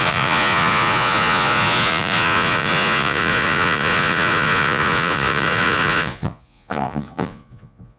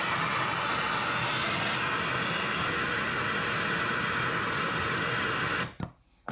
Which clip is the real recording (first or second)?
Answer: second